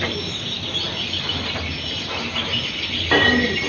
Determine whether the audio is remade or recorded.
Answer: recorded